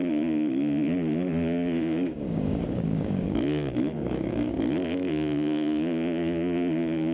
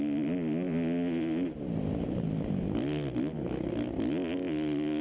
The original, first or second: second